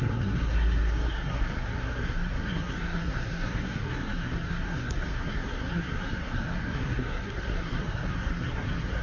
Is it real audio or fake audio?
fake